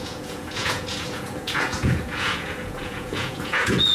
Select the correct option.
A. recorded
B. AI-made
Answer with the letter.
B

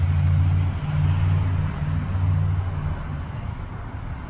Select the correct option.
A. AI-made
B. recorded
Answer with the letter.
B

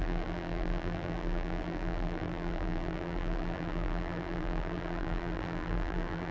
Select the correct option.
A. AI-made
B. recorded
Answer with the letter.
A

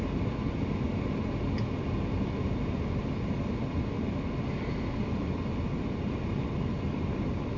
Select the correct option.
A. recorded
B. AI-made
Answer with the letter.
A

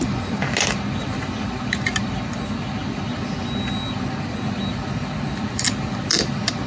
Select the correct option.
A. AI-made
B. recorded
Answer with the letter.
B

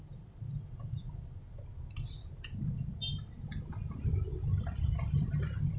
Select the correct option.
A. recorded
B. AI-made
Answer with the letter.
A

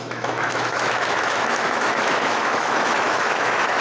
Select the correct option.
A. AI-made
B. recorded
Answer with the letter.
A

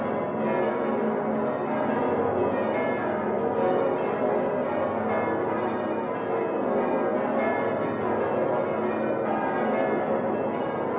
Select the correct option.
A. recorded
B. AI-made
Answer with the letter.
A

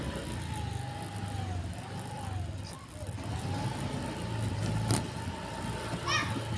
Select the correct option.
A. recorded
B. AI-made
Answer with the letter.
A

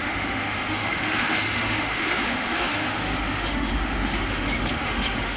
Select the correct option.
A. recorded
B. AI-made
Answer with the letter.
B